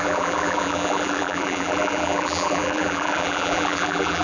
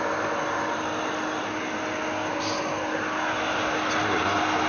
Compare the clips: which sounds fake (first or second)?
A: first